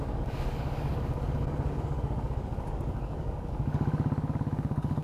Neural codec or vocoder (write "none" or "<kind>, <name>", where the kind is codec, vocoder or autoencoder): codec, DAC